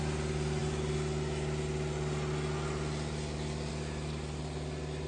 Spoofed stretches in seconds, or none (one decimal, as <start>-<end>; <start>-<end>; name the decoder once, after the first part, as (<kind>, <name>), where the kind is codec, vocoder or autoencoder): none